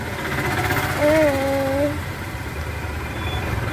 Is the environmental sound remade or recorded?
recorded